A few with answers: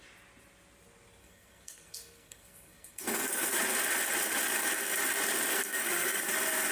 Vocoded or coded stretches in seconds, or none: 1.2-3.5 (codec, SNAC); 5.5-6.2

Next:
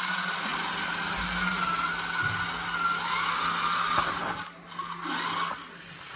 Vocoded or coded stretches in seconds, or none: none

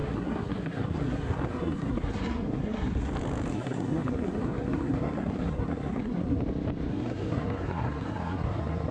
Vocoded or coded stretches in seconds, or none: 0.0-3.1 (codec, SNAC); 3.5-6.4; 6.9-8.9

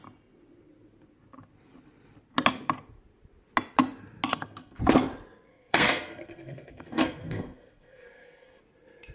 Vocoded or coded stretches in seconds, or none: 4.3-4.8 (codec, SNAC); 5.5-8.6

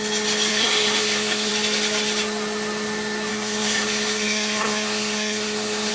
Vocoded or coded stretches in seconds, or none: 0.5-1.5 (codec, SNAC); 3.3-5.9